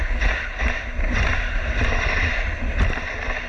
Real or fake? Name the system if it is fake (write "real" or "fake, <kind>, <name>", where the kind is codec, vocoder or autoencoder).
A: real